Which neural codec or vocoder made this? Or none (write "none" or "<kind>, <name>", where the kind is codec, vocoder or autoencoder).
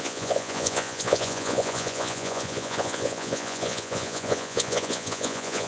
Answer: vocoder, Vocos